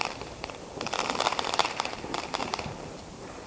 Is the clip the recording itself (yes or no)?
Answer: no